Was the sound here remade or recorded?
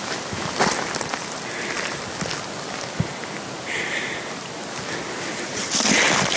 recorded